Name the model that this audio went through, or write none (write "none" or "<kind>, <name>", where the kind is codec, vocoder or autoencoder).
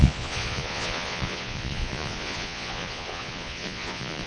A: vocoder, Vocos